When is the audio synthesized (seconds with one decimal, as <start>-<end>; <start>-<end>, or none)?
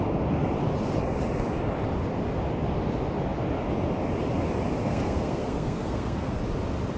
4.8-6.4